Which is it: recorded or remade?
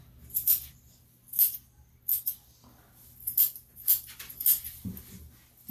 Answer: recorded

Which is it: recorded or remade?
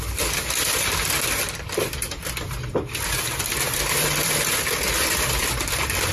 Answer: remade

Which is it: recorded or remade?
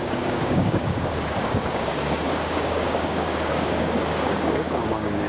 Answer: remade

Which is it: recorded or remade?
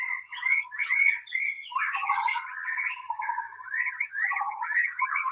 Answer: remade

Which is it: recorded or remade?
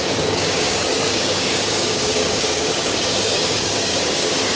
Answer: remade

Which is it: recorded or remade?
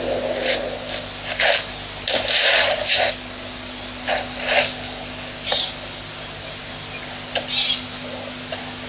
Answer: recorded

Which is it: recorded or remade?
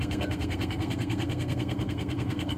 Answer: remade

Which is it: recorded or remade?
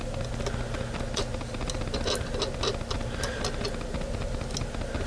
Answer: recorded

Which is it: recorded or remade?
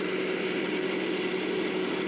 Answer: recorded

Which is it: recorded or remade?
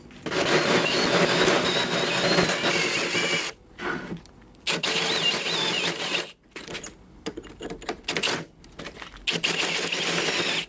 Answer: recorded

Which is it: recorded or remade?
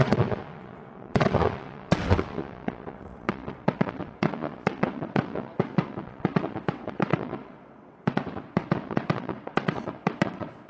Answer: remade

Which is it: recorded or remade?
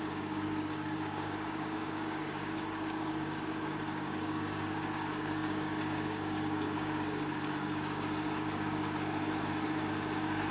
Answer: remade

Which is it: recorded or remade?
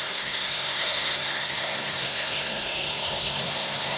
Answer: remade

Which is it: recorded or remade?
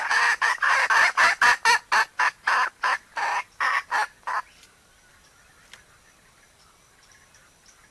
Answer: recorded